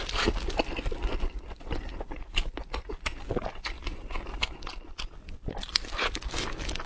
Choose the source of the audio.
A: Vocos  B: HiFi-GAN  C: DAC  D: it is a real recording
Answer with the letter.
D